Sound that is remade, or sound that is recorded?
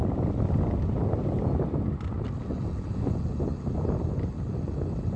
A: recorded